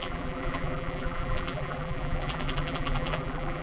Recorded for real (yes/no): no